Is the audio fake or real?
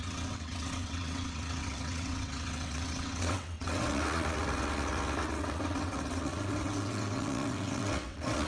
fake